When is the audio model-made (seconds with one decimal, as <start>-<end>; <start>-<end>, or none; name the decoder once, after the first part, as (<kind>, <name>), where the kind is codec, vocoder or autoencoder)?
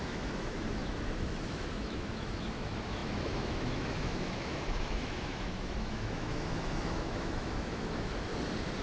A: 0.0-8.3 (autoencoder, DAC-VAE)